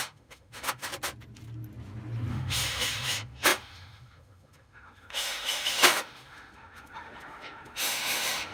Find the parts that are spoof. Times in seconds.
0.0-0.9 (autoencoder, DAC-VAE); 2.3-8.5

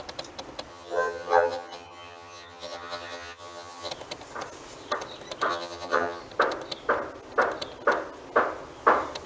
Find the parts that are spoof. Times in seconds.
0.7-3.9 (vocoder, HiFi-GAN); 5.5-6.2